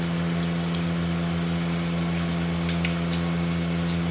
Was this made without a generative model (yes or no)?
yes